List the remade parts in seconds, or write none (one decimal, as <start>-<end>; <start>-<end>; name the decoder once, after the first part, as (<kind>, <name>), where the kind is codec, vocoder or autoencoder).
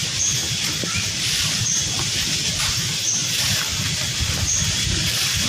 0.7-1.6 (vocoder, BigVGAN v2); 2.5-3.2; 4.8-5.5